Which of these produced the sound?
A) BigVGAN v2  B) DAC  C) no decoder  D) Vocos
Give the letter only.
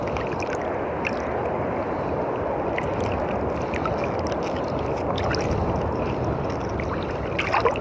C